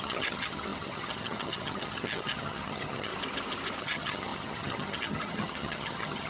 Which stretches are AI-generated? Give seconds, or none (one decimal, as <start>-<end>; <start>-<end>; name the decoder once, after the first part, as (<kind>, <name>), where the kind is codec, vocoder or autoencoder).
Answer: 0.0-3.1 (vocoder, HiFi-GAN); 3.8-6.3